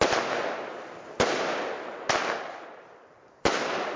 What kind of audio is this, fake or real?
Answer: real